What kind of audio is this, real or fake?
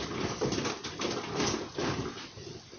real